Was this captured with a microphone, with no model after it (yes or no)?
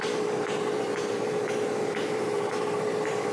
no